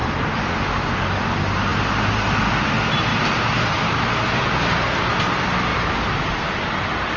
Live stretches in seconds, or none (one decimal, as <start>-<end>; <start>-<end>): 0.0-3.1; 3.9-5.7; 6.3-7.2